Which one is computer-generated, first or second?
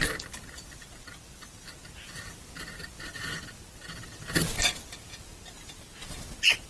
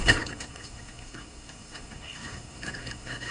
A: second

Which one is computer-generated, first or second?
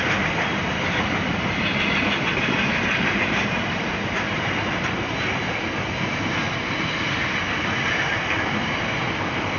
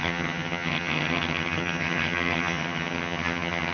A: second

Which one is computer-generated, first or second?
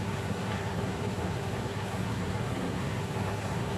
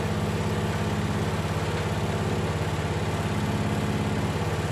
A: first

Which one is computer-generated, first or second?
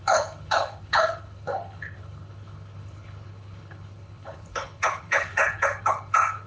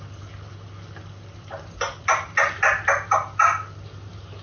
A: first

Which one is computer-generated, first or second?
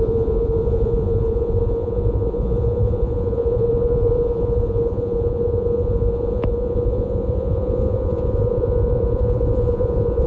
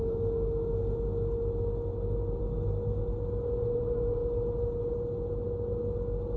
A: first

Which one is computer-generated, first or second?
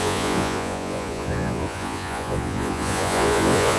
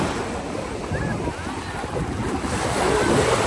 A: first